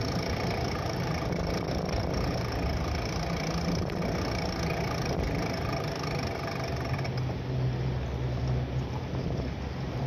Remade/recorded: recorded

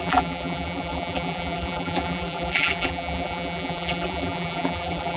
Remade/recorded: remade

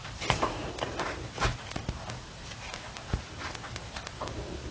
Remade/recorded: recorded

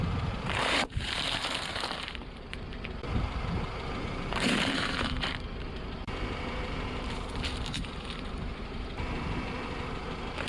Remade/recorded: remade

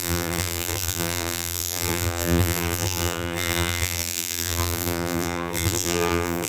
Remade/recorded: remade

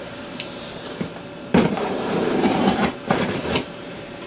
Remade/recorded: remade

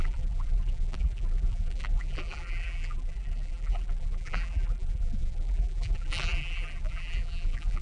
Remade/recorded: remade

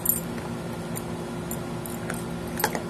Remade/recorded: recorded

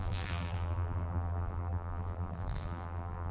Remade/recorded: remade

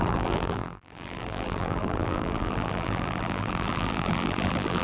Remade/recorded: remade